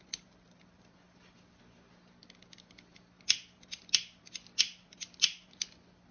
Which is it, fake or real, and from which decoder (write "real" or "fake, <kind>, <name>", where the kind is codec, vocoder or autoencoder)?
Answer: real